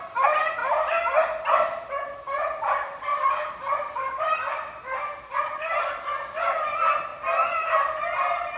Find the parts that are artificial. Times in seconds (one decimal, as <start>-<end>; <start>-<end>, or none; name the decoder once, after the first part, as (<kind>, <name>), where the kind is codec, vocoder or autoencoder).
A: 3.1-6.4 (vocoder, BigVGAN v2)